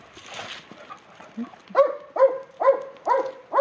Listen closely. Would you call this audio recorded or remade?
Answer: recorded